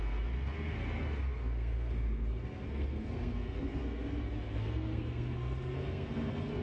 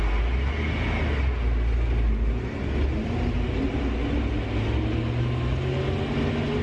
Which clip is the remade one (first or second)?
first